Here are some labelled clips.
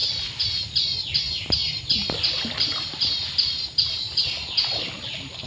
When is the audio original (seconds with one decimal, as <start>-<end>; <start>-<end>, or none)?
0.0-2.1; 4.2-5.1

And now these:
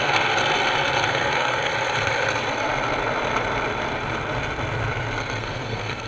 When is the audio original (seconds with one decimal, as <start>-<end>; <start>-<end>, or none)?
0.4-1.1; 1.7-5.4

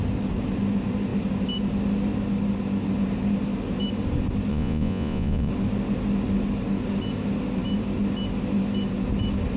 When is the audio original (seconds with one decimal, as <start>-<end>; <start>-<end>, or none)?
0.0-4.5; 5.5-9.6

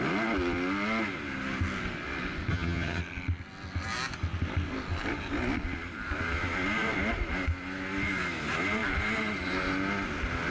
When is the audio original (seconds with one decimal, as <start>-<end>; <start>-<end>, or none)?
0.0-2.5; 3.0-10.5